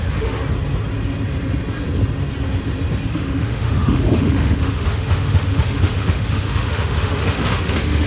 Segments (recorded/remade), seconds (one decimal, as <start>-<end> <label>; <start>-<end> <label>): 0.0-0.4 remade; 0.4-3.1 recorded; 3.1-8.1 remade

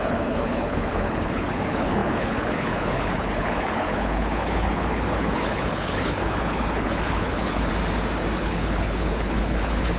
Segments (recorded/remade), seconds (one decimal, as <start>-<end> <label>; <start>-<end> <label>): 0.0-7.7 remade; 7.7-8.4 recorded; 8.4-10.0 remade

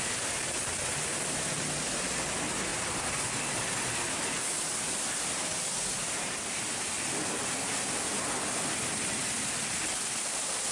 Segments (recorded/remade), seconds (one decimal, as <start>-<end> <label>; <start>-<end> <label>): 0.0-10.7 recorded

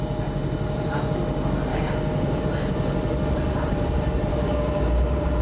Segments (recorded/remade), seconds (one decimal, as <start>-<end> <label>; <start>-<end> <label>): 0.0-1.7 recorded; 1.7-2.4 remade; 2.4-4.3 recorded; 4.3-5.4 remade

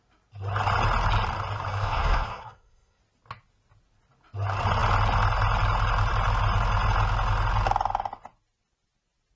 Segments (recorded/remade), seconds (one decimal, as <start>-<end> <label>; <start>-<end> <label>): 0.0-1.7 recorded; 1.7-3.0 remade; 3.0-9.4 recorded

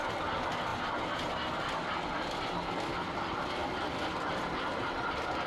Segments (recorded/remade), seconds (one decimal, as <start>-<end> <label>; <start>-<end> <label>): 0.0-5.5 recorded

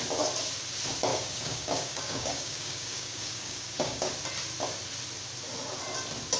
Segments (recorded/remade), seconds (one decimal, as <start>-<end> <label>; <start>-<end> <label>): 0.0-1.1 recorded; 1.1-4.1 remade; 4.1-6.4 recorded

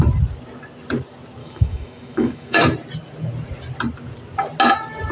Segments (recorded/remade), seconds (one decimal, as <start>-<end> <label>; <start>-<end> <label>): 0.0-1.4 recorded; 1.4-2.6 remade; 2.6-5.1 recorded